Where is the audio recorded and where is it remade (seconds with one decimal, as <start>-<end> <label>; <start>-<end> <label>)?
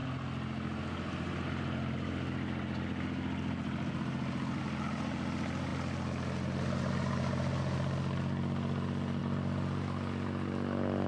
0.0-11.1 recorded